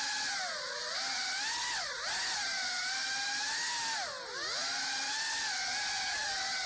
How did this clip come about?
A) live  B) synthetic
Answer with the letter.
A